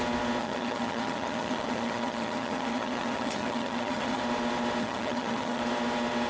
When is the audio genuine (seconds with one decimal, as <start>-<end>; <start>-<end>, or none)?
0.0-0.4; 4.2-4.8; 5.6-6.3